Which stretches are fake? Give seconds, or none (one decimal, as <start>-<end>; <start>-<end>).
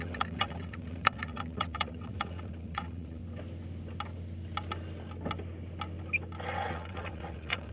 0.0-3.2; 6.7-7.7